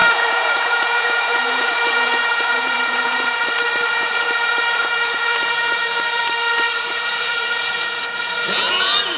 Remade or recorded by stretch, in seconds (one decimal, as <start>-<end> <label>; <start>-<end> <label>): 0.0-3.4 remade; 3.4-3.9 recorded; 3.9-6.2 remade; 6.2-6.8 recorded; 6.8-9.2 remade